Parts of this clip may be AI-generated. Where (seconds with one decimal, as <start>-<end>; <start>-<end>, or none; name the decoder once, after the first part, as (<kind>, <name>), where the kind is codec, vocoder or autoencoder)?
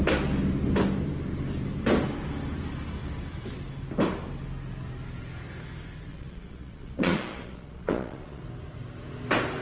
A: 6.1-8.4 (vocoder, Vocos)